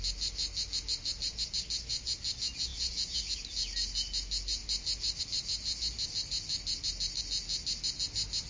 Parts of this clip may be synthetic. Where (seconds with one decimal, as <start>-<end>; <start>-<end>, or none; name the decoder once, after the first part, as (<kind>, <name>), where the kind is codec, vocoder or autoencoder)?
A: 2.7-3.3 (vocoder, Vocos)